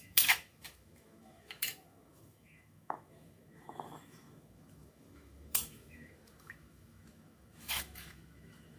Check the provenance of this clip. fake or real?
fake